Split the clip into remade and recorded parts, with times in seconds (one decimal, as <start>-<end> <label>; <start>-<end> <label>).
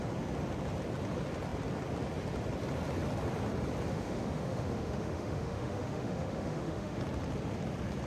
0.0-3.9 recorded; 3.9-7.0 remade; 7.0-8.1 recorded